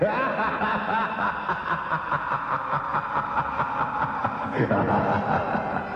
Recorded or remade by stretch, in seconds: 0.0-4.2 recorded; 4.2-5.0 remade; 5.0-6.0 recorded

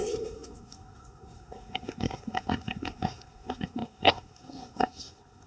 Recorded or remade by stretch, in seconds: 0.0-5.5 remade

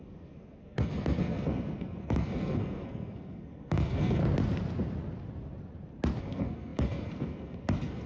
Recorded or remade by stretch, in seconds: 0.0-4.2 remade; 4.2-6.2 recorded; 6.2-8.1 remade

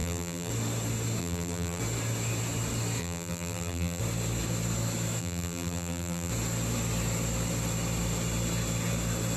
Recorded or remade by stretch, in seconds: 0.0-0.5 remade; 0.5-1.2 recorded; 1.2-1.8 remade; 1.8-3.0 recorded; 3.0-4.0 remade; 4.0-5.2 recorded; 5.2-6.3 remade; 6.3-9.4 recorded

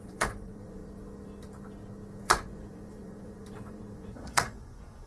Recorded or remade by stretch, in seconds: 0.0-0.8 remade; 0.8-2.2 recorded; 2.2-5.1 remade

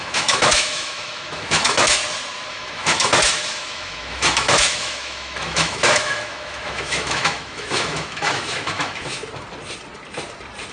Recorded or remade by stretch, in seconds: 0.0-2.0 remade; 2.0-2.5 recorded; 2.5-9.2 remade; 9.2-10.7 recorded

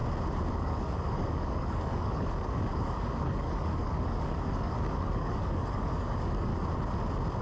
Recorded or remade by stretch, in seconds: 0.0-0.5 recorded; 0.5-6.5 remade; 6.5-7.4 recorded